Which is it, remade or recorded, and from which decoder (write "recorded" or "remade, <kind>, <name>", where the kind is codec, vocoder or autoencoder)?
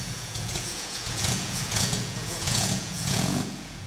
remade, vocoder, Vocos